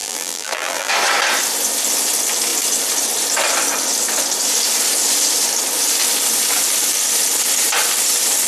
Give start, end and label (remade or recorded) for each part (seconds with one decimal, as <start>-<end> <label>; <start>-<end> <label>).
0.0-0.9 remade; 0.9-8.5 recorded